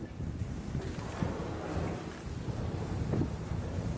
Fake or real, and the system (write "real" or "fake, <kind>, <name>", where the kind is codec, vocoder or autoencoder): real